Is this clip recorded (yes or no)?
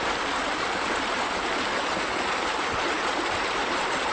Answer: no